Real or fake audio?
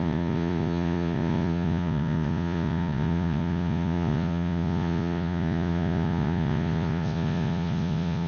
fake